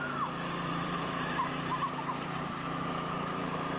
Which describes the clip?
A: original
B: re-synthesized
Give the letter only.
B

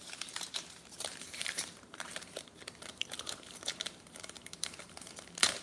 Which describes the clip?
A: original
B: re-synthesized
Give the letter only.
B